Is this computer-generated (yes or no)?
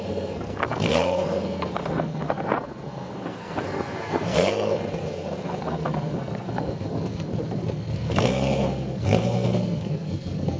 yes